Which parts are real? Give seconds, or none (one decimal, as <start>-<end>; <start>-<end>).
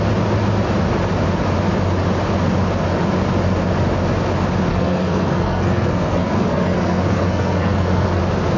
0.0-4.7; 8.2-8.6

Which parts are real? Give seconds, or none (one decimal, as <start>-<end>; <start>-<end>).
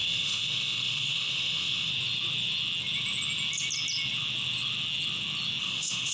1.9-5.6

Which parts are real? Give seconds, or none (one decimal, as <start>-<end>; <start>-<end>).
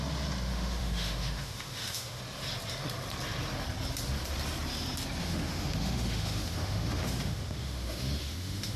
0.0-0.5; 2.2-5.2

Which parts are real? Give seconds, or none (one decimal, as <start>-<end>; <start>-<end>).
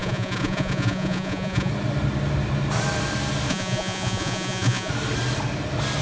1.7-3.5; 4.9-6.0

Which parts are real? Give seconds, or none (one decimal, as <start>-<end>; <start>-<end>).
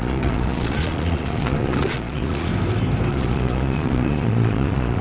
2.5-3.1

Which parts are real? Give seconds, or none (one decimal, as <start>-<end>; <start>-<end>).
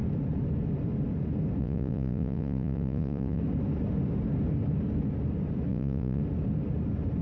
0.0-1.6; 3.4-5.7; 6.2-7.2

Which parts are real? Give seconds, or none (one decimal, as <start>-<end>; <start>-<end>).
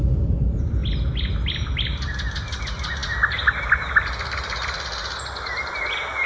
0.0-6.3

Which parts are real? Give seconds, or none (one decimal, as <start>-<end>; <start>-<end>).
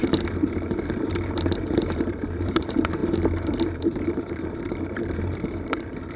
none